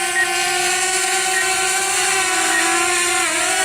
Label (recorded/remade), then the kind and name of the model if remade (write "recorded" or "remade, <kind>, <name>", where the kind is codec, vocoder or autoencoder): recorded